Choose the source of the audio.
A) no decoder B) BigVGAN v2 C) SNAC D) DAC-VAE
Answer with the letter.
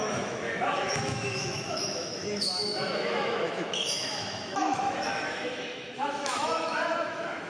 D